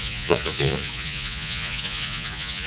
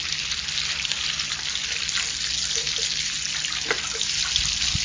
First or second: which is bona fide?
second